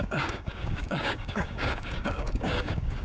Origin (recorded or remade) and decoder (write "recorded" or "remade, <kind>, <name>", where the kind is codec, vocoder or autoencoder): remade, codec, DAC